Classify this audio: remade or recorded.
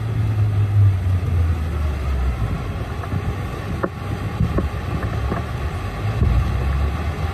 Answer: recorded